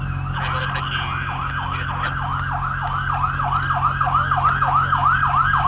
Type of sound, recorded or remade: recorded